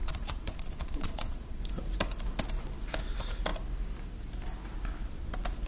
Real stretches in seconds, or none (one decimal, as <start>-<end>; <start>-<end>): 1.6-5.7